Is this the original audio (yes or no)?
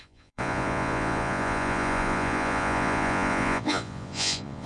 no